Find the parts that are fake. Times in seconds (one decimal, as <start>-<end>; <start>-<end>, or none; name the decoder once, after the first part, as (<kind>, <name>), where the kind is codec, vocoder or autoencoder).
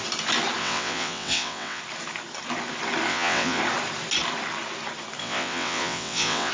0.6-1.8 (vocoder, WaveNeXt); 3.1-3.6; 5.2-6.5